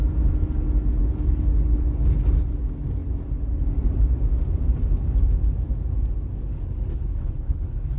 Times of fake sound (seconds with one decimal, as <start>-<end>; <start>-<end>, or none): 0.9-1.9; 6.5-8.0